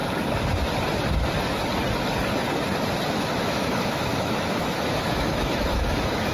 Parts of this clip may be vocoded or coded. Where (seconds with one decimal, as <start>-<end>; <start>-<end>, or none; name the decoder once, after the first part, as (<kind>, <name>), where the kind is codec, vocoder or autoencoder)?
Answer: 3.2-6.3 (autoencoder, DAC-VAE)